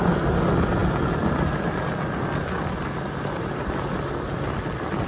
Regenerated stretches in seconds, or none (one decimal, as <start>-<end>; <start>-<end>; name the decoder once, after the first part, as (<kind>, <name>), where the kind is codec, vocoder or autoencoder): none